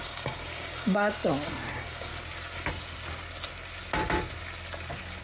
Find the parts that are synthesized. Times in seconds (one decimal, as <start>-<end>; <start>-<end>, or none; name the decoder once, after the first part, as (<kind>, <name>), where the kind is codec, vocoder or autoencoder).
0.0-1.2 (codec, DAC); 1.7-2.1